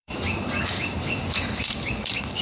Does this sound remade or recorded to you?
remade